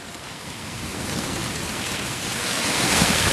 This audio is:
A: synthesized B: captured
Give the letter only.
A